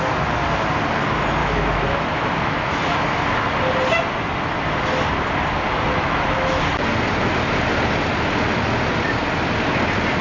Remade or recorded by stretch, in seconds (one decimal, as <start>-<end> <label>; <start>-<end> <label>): 0.0-1.4 recorded; 1.4-3.2 remade; 3.2-5.9 recorded; 5.9-6.6 remade; 6.6-10.2 recorded